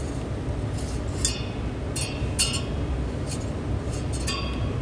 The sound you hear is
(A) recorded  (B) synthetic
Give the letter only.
A